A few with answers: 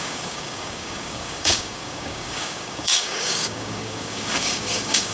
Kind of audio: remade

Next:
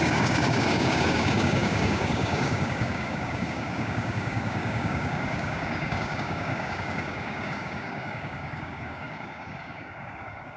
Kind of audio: remade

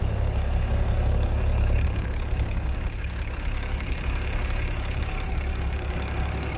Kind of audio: remade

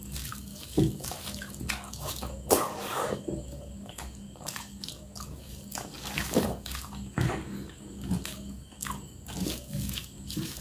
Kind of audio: remade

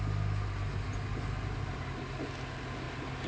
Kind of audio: recorded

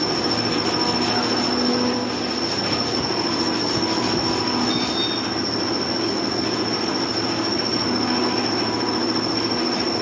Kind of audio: recorded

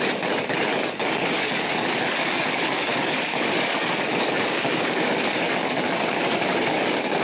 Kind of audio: remade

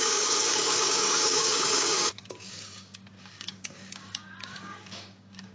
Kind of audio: remade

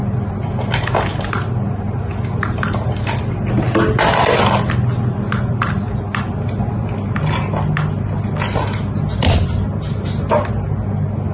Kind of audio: recorded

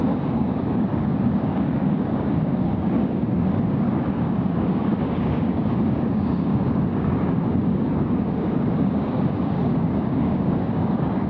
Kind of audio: remade